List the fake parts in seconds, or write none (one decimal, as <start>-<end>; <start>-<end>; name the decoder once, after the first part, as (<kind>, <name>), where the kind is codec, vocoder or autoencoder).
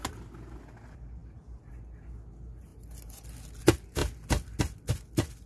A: none